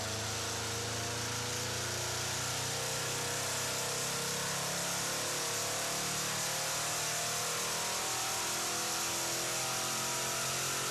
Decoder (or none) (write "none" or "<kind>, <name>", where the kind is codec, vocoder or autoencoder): none